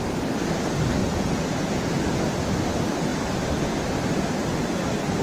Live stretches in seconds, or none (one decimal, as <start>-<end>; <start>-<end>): 0.0-1.0; 2.0-5.2